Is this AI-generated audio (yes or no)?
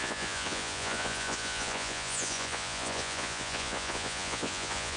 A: yes